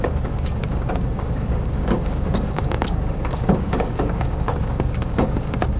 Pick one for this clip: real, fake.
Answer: fake